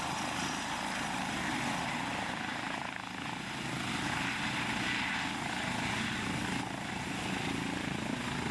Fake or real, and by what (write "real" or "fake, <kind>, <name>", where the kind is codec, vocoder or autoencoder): real